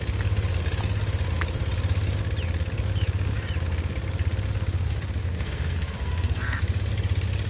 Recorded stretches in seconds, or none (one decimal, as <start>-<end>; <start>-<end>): 0.0-5.2; 6.6-7.5